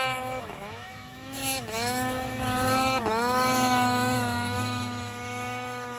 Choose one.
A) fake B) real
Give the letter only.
A